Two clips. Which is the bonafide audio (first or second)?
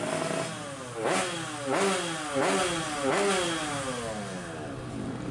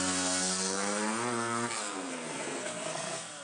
first